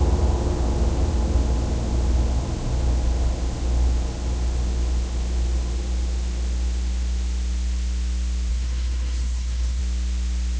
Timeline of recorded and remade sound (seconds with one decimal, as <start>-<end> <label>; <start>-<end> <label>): 0.0-8.5 recorded; 8.5-9.8 remade; 9.8-10.6 recorded